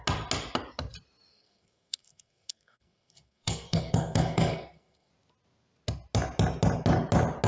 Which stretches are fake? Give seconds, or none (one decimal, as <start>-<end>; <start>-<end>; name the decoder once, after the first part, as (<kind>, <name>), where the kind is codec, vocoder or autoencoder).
1.3-5.1 (codec, SNAC)